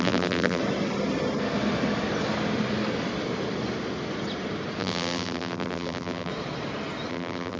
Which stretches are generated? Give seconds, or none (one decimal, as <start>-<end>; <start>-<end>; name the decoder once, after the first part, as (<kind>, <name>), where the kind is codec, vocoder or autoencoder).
0.0-0.6 (vocoder, BigVGAN v2); 4.8-6.3; 7.1-7.6